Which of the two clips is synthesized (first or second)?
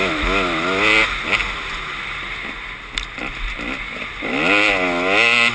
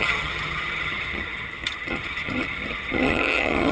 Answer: second